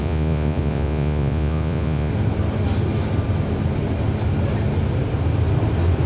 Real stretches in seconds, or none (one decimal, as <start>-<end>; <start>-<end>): 2.1-6.1